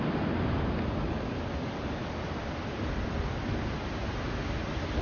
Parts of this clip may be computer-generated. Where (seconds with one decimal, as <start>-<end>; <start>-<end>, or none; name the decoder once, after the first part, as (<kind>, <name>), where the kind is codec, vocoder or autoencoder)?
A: none